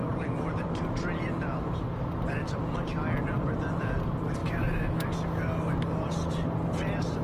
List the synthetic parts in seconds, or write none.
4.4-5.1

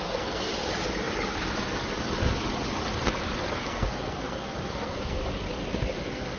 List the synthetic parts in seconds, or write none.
0.0-0.5; 3.5-5.2; 6.0-6.4

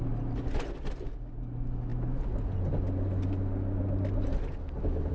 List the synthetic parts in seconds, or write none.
none

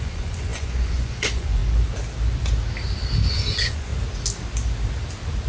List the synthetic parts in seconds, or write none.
0.0-1.6; 3.3-3.9

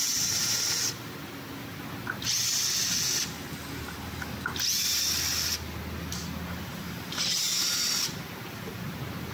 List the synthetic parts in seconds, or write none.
6.7-7.4

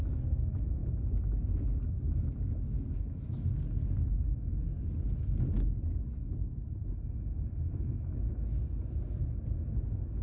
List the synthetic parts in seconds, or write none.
none